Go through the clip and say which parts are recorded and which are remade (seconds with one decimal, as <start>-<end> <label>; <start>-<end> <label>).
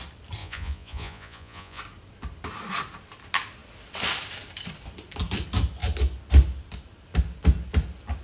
0.0-0.4 recorded; 0.4-1.8 remade; 1.8-8.2 recorded